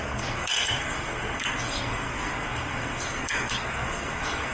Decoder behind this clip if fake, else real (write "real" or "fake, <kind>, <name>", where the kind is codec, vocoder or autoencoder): fake, codec, SNAC